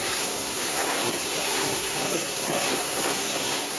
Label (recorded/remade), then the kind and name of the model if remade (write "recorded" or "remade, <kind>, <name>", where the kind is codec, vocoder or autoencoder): remade, codec, SNAC